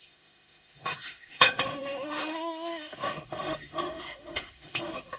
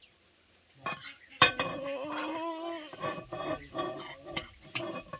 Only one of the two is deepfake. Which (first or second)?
first